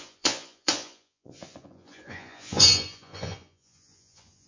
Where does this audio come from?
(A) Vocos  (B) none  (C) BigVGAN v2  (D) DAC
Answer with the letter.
A